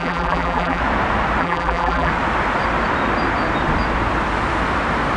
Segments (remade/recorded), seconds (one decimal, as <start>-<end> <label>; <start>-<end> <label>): 0.0-0.8 remade; 0.8-1.4 recorded; 1.4-2.1 remade; 2.1-5.2 recorded